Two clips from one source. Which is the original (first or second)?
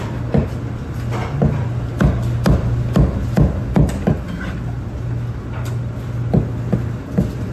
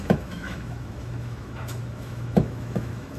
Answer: first